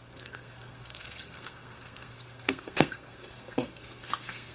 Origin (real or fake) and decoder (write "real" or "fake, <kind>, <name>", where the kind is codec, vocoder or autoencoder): fake, codec, SNAC